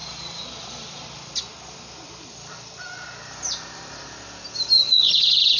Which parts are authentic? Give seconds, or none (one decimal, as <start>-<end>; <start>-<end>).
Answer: 0.0-4.8